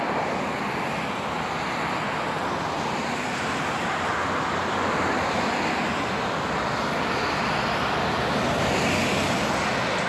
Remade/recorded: recorded